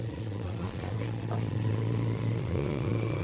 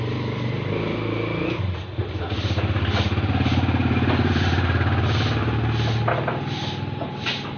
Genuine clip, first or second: second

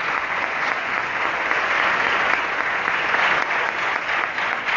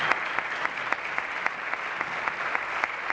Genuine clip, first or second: second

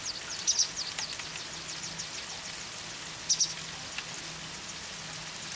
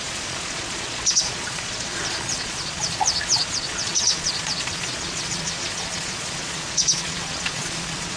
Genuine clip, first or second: first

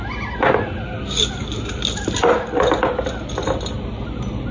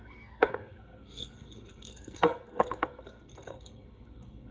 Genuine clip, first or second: first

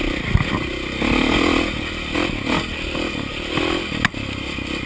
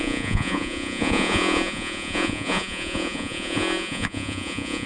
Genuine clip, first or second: first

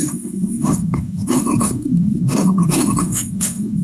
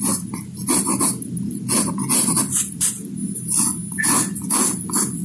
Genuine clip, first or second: second